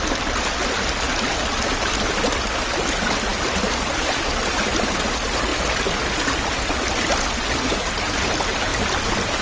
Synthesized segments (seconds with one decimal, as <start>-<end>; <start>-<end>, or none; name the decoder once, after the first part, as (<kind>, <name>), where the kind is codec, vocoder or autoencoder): none

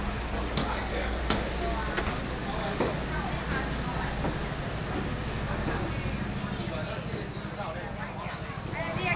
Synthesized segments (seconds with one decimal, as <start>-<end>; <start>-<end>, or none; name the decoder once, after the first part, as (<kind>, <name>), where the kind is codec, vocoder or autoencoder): 0.6-1.2 (codec, DAC); 2.4-2.9

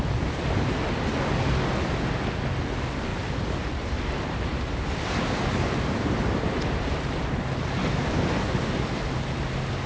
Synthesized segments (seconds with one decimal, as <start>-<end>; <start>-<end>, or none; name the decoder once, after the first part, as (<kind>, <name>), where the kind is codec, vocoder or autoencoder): 3.1-5.4 (vocoder, BigVGAN v2)

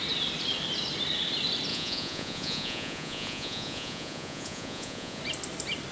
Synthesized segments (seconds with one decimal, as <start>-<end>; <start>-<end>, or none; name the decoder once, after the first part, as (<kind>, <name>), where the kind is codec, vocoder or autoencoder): 1.7-5.2 (vocoder, Vocos)

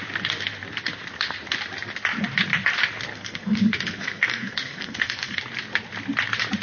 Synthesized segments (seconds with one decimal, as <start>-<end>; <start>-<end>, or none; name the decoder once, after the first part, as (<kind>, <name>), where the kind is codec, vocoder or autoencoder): 3.1-5.4 (codec, SNAC)

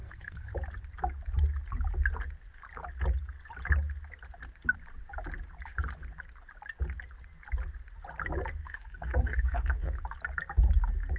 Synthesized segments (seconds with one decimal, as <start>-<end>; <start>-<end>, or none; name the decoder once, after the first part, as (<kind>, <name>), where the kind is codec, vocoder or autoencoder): 0.0-0.5 (codec, SNAC); 8.6-10.0